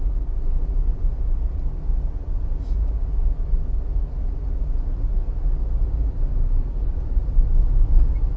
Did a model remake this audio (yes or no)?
no